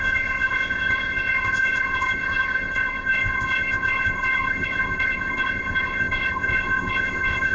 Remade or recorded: remade